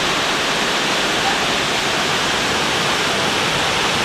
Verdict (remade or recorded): recorded